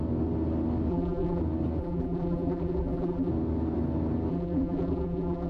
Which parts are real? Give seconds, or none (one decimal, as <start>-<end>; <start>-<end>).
0.0-0.9; 1.4-1.8; 3.3-4.3